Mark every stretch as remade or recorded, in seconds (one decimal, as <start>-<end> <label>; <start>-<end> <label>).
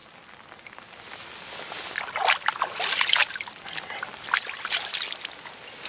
0.0-5.9 recorded